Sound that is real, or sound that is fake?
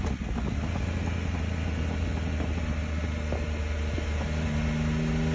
real